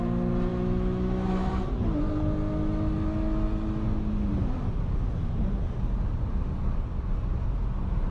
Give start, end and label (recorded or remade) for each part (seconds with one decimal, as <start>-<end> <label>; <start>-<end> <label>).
0.0-0.5 recorded; 0.5-1.5 remade; 1.5-8.1 recorded